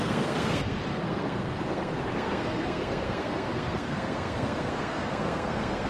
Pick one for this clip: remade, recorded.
remade